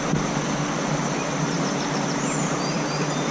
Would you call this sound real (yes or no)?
yes